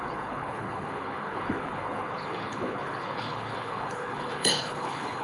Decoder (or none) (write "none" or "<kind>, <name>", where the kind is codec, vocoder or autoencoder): codec, HILCodec